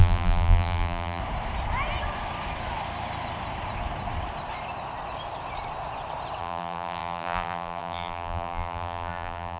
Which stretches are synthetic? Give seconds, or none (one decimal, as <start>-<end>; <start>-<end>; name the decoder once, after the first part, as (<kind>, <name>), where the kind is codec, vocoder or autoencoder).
0.0-1.2 (vocoder, BigVGAN v2); 6.4-9.6